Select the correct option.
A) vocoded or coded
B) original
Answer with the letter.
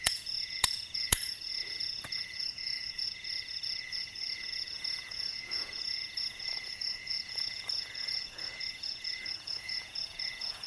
A